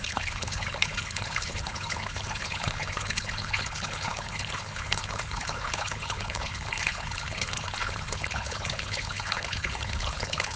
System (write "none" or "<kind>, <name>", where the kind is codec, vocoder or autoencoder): codec, HILCodec